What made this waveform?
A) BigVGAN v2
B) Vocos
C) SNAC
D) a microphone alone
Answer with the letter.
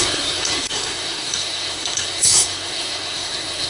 C